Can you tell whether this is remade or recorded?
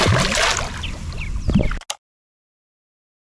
recorded